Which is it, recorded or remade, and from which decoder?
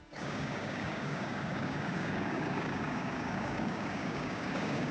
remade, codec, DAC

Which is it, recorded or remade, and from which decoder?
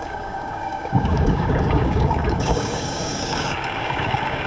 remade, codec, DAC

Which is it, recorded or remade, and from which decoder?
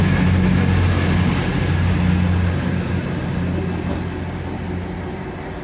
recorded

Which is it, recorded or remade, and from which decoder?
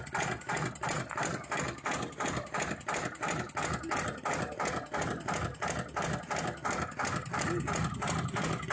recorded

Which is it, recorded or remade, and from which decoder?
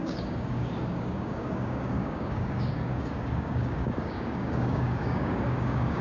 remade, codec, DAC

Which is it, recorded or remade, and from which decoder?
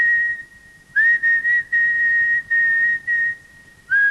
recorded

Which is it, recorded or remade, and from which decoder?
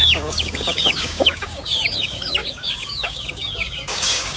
remade, codec, DAC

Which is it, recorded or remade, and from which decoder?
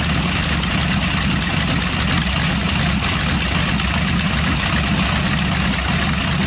recorded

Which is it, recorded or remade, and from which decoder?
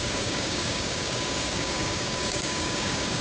remade, codec, DAC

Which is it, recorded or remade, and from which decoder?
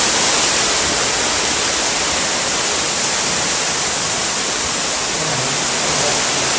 recorded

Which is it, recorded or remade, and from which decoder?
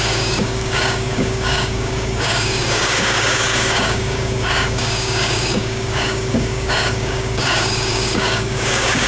remade, codec, DAC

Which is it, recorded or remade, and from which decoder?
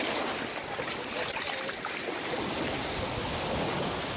recorded